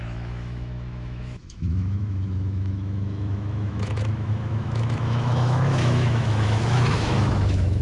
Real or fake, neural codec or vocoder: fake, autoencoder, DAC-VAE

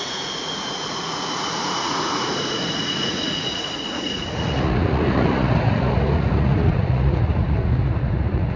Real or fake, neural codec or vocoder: fake, vocoder, Vocos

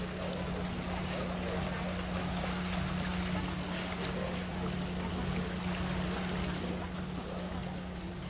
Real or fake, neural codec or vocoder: real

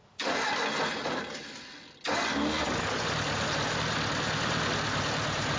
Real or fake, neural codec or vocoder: real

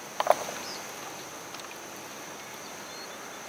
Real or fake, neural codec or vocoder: real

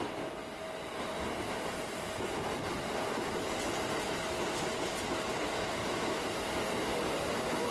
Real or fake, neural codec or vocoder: real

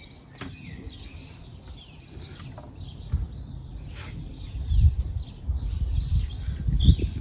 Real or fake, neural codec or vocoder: real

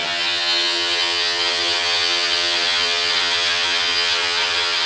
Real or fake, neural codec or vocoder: fake, vocoder, HiFi-GAN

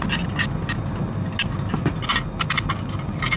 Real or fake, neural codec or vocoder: real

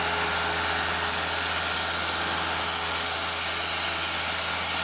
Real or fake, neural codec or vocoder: real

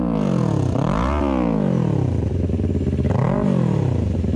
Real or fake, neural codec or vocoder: real